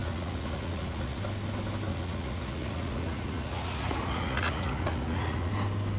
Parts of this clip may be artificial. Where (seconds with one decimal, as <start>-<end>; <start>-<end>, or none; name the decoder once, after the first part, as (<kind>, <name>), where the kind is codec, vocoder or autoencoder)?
0.0-1.2 (vocoder, Vocos); 1.9-5.5